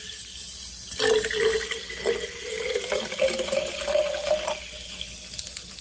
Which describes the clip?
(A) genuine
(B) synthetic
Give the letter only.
A